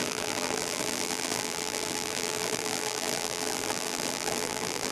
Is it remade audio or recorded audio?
remade